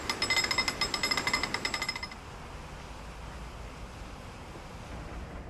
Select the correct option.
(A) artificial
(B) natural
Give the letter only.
B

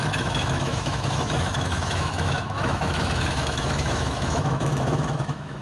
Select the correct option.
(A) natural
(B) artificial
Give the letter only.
B